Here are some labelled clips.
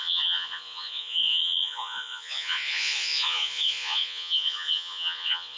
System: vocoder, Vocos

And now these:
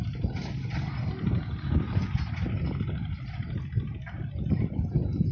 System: none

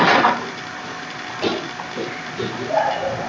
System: vocoder, BigVGAN v2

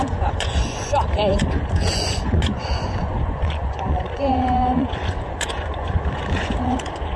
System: vocoder, Vocos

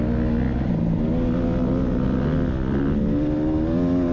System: none